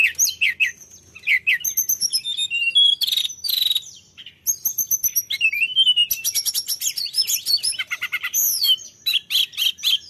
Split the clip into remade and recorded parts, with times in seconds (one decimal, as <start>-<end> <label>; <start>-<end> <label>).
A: 0.0-3.2 recorded; 3.2-6.0 remade; 6.0-6.5 recorded; 6.5-10.1 remade